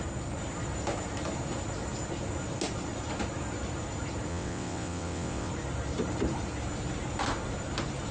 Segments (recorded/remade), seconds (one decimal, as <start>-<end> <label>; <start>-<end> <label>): 0.0-4.3 recorded; 4.3-5.5 remade; 5.5-8.1 recorded